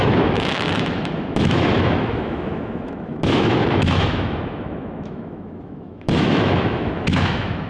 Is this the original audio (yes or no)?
no